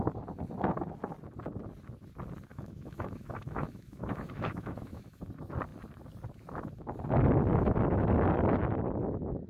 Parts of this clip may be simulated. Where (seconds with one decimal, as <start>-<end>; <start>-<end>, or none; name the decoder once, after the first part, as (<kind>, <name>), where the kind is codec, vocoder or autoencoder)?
2.5-5.2 (autoencoder, DAC-VAE); 7.5-8.1